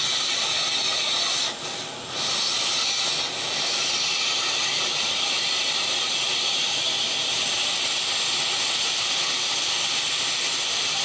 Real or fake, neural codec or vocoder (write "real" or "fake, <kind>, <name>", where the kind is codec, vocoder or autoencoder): real